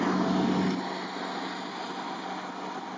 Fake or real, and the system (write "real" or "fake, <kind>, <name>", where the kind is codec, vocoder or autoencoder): real